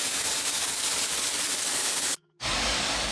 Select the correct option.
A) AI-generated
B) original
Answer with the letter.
A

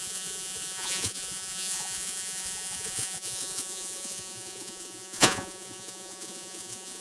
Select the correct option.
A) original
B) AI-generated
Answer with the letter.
B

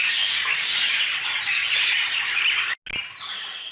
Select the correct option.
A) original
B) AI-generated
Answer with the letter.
A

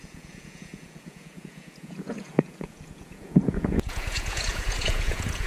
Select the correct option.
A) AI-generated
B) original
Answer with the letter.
A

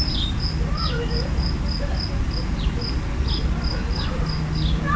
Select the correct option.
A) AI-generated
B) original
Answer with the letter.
B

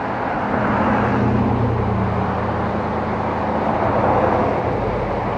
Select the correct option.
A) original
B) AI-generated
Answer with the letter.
A